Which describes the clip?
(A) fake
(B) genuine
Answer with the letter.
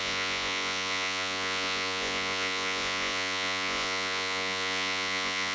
A